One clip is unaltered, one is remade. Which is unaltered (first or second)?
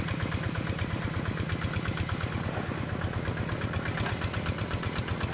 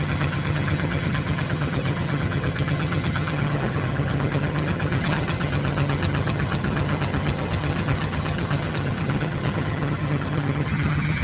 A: first